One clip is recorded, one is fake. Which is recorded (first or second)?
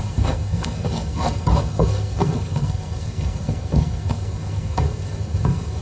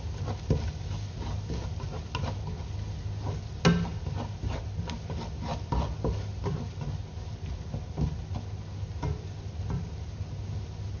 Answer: second